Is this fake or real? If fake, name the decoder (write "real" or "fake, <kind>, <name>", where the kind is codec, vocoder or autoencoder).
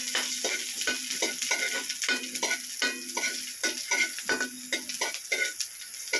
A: real